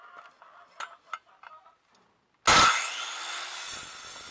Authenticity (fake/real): real